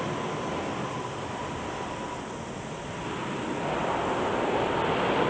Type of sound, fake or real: real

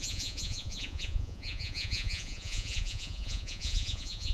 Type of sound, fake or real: fake